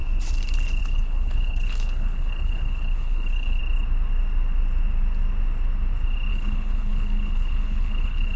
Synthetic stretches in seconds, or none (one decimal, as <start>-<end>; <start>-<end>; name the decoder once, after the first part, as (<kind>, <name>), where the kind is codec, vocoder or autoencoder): 0.8-3.6 (codec, HILCodec); 6.3-8.4